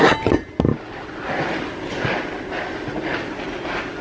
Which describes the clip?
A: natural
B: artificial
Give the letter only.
A